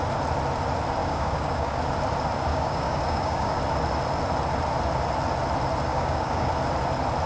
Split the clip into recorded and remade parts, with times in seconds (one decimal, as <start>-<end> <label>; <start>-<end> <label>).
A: 0.0-1.0 recorded; 1.0-1.8 remade; 1.8-2.5 recorded; 2.5-3.6 remade; 3.6-5.9 recorded; 5.9-6.5 remade; 6.5-7.3 recorded